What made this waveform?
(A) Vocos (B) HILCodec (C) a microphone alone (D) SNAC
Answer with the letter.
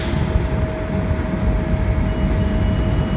C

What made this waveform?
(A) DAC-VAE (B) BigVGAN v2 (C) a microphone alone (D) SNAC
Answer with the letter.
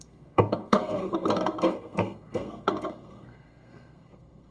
D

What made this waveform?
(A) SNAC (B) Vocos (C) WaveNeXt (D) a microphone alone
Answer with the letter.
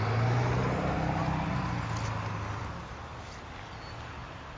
D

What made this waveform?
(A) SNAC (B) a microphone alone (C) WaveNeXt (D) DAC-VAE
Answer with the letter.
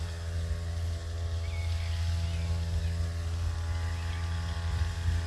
B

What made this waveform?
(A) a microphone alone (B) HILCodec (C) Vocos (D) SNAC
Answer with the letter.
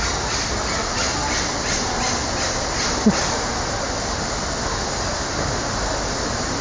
A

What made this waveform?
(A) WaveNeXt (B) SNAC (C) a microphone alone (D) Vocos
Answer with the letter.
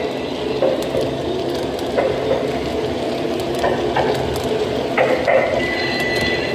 C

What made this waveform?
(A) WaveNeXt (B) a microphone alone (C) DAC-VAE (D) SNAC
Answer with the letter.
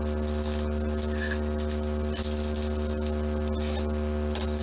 B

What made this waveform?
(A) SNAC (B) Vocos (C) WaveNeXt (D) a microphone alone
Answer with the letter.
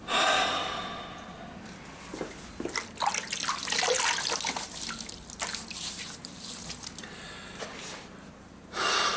D